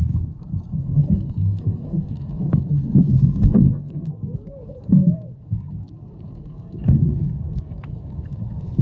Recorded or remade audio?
remade